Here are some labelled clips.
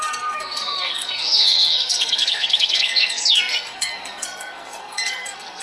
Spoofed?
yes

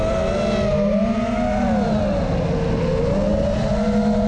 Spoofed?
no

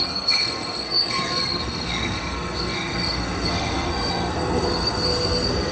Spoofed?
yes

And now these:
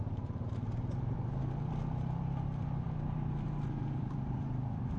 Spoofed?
yes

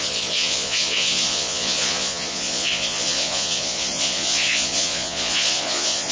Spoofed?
yes